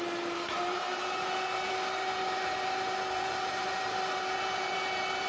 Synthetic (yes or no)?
yes